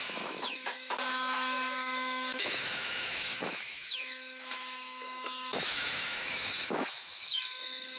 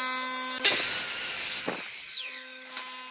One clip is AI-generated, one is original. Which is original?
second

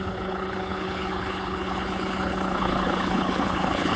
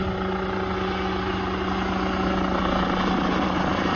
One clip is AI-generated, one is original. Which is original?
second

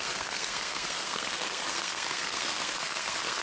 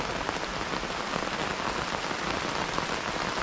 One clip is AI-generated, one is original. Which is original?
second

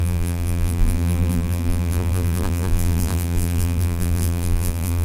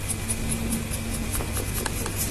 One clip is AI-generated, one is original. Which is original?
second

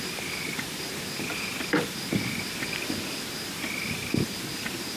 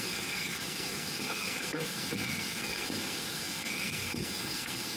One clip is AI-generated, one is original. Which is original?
first